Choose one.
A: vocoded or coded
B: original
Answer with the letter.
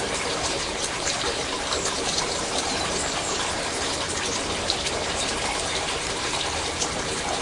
A